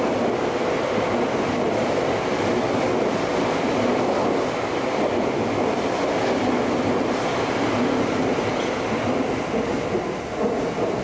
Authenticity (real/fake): real